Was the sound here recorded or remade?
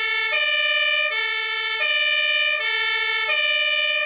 recorded